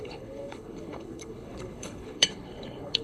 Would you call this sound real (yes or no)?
no